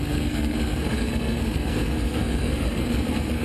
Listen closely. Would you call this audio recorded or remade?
remade